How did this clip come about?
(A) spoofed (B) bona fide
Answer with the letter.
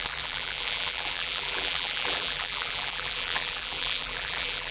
A